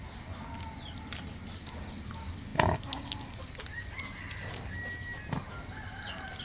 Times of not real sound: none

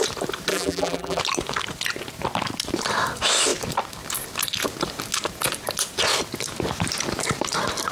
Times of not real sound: 0.5-1.2

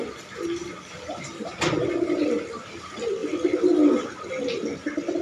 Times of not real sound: 0.7-1.6

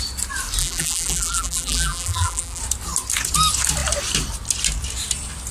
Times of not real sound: 0.6-2.6

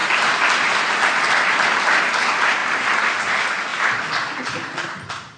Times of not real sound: 0.0-0.7; 2.6-3.1; 3.7-5.4